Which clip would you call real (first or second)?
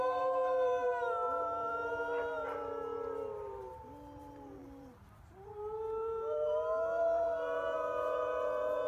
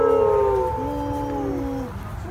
second